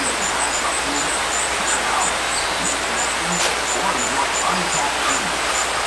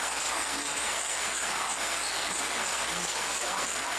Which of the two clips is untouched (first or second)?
first